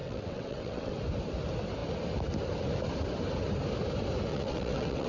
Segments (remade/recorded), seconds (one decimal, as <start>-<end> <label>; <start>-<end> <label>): 0.0-0.9 remade; 0.9-4.3 recorded; 4.3-5.1 remade